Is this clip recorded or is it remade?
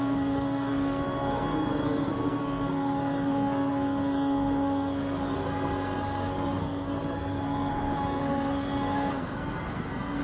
remade